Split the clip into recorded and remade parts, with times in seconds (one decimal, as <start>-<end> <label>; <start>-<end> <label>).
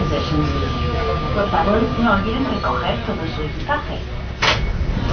0.0-0.5 recorded; 0.5-2.3 remade; 2.3-5.1 recorded